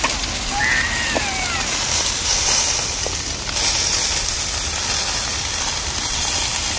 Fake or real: real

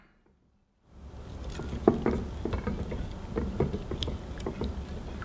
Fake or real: real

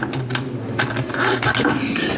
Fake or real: real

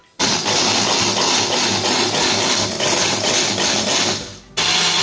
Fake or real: real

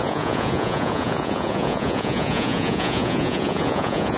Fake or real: fake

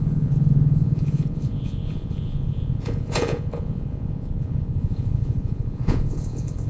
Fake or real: fake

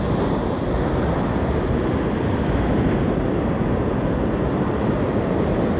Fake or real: real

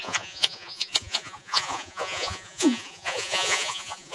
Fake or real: fake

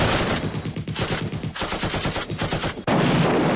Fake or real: real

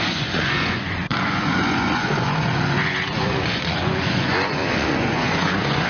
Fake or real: fake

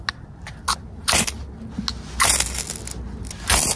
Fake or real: real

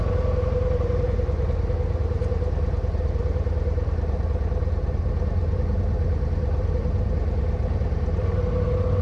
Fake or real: real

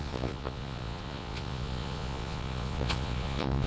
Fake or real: fake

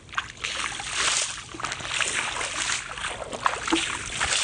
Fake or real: real